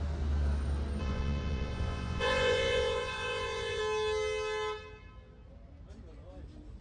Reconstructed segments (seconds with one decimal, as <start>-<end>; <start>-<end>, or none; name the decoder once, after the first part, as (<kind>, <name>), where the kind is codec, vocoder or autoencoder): 1.0-3.8 (vocoder, Vocos)